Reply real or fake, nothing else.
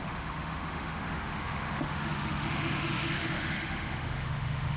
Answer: fake